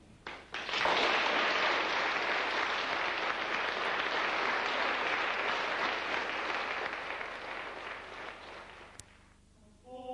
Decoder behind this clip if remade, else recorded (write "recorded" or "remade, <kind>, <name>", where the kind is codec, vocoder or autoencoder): recorded